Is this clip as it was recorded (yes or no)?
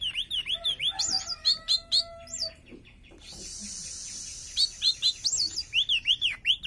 no